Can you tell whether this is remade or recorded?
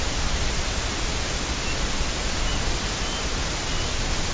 recorded